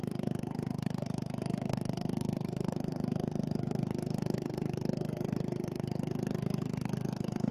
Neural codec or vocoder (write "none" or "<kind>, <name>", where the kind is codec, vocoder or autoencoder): codec, SNAC